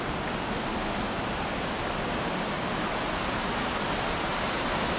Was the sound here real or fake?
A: real